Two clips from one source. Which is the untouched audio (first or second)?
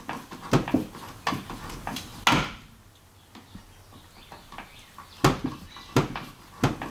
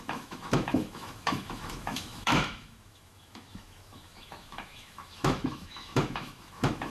first